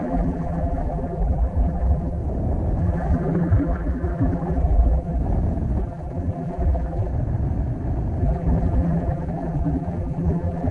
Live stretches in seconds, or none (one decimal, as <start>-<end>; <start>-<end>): 2.2-2.8; 5.2-5.8; 7.1-8.2